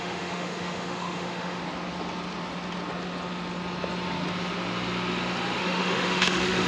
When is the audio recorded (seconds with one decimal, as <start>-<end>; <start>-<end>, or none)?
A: 1.6-5.6